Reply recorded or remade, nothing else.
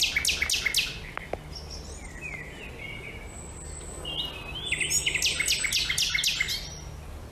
recorded